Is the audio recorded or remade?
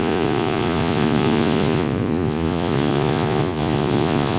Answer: remade